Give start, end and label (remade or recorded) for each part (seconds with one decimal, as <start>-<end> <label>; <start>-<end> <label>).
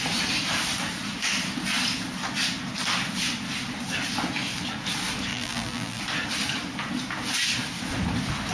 0.0-5.3 recorded; 5.3-6.0 remade; 6.0-8.5 recorded